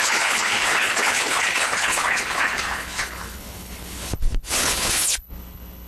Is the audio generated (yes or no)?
yes